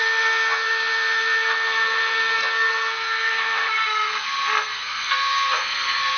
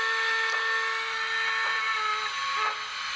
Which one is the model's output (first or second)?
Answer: first